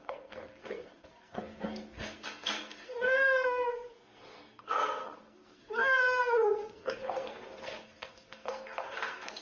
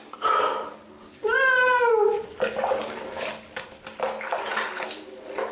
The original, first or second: second